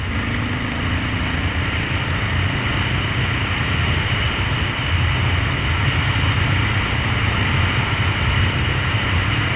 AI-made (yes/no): no